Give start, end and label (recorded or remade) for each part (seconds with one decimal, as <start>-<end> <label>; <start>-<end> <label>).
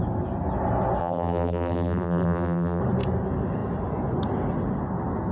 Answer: 0.0-1.0 recorded; 1.0-2.8 remade; 2.8-5.3 recorded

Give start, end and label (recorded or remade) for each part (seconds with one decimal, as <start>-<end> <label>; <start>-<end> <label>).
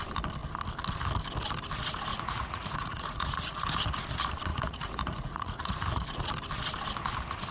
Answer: 0.0-2.1 recorded; 2.1-3.6 remade; 3.6-4.5 recorded; 4.5-6.3 remade; 6.3-7.5 recorded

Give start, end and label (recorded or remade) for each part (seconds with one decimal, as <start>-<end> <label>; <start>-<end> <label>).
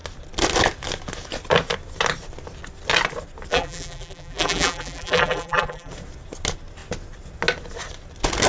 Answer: 0.0-3.5 recorded; 3.5-5.9 remade; 5.9-8.5 recorded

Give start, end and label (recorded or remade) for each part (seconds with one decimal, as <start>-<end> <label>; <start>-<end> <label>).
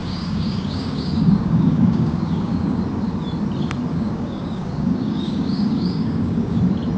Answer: 0.0-2.8 remade; 2.8-3.9 recorded; 3.9-6.6 remade; 6.6-7.0 recorded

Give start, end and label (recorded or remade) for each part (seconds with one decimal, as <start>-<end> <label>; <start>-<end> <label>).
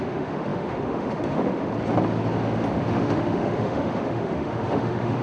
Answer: 0.0-1.7 remade; 1.7-2.7 recorded; 2.7-5.2 remade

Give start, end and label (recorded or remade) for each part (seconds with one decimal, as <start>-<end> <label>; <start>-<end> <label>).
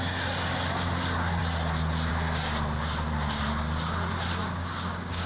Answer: 0.0-4.4 recorded; 4.4-5.3 remade